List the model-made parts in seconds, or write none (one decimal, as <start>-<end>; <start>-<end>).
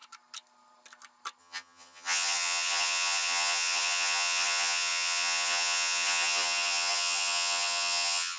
1.4-8.4